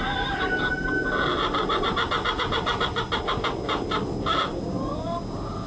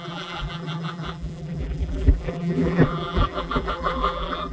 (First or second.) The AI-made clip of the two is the second